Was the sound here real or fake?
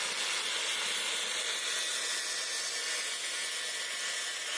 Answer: real